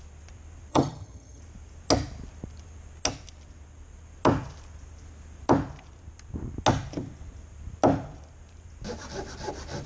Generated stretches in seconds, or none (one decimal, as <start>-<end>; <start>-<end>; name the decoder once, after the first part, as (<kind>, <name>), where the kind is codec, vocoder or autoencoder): 0.7-1.4 (vocoder, HiFi-GAN)